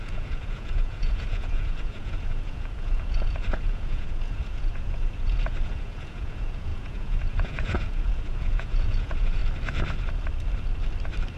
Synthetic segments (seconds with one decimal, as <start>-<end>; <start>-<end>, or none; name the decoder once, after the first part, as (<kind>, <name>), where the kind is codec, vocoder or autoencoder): 0.0-9.4 (vocoder, Vocos)